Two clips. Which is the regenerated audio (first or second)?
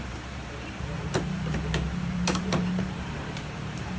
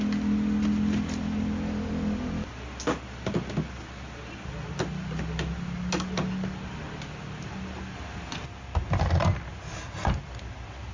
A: first